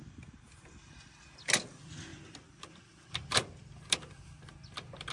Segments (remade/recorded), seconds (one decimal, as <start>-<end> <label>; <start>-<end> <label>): 0.0-5.1 recorded